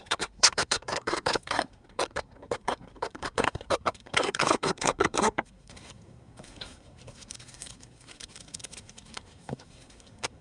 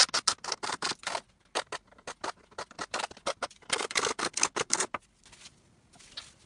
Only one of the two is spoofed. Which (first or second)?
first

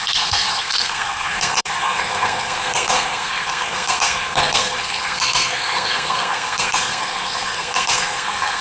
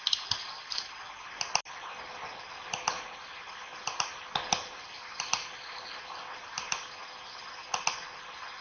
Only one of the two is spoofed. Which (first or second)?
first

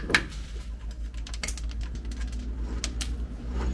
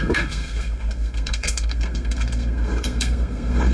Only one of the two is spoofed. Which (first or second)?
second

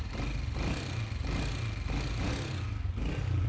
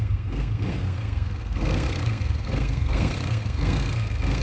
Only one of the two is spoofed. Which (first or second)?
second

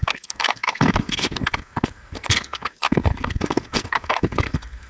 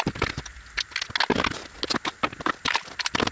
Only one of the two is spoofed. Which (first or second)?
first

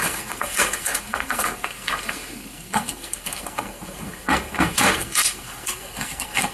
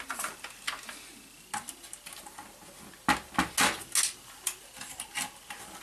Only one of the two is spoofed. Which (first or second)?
first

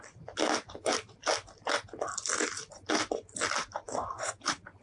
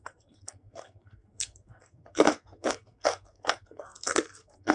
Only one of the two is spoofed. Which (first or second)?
second